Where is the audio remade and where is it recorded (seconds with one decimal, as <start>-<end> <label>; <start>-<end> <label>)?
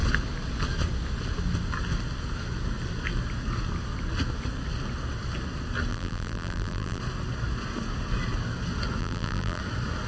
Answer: 0.0-5.9 recorded; 5.9-7.0 remade; 7.0-9.0 recorded; 9.0-9.6 remade; 9.6-10.1 recorded